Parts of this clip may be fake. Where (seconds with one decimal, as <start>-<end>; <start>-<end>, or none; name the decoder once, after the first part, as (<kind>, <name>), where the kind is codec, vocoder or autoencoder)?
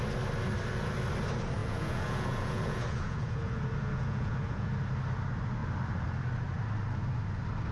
1.6-4.7 (vocoder, Vocos)